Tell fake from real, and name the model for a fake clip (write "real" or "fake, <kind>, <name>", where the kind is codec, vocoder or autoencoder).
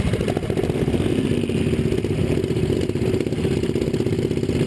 real